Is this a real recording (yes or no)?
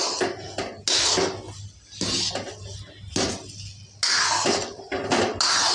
yes